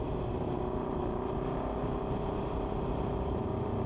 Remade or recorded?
recorded